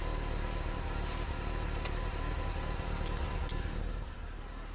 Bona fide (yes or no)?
no